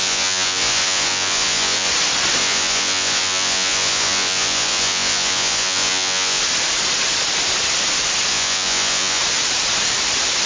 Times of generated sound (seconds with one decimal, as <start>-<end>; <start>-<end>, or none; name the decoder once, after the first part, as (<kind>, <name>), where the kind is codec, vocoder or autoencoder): 0.0-1.9 (vocoder, Vocos); 2.4-6.4; 8.3-9.2